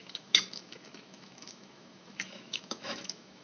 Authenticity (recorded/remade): remade